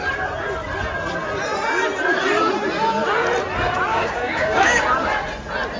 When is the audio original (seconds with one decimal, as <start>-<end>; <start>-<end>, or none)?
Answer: 0.0-3.9; 4.8-5.8